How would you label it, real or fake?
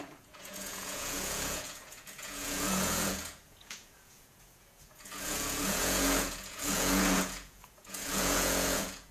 fake